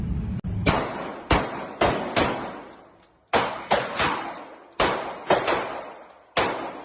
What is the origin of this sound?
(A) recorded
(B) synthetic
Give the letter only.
A